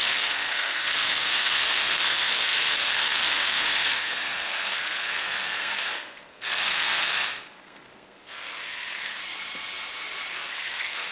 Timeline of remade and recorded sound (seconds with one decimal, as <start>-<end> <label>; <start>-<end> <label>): 0.0-9.2 remade; 9.2-10.3 recorded; 10.3-11.1 remade